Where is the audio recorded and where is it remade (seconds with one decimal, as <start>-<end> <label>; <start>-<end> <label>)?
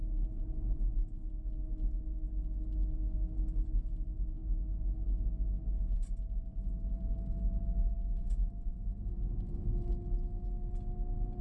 0.0-11.4 recorded